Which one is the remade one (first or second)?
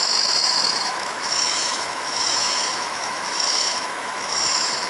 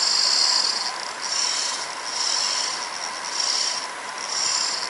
first